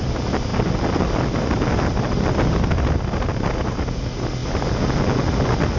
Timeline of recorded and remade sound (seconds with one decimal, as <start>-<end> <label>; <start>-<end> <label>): 0.0-5.8 recorded